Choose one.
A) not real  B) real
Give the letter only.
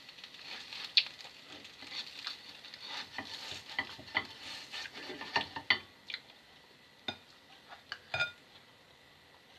B